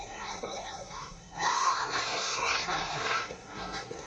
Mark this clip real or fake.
fake